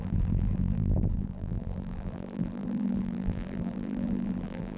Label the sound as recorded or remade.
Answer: remade